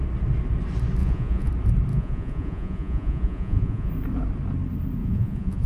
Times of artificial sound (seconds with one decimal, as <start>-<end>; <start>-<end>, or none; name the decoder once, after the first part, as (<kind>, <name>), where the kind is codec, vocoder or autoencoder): 1.0-1.5 (vocoder, Vocos); 1.9-3.9; 5.0-5.7